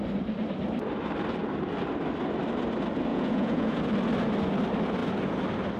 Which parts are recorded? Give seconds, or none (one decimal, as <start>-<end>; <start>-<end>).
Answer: 0.0-3.1; 3.8-5.8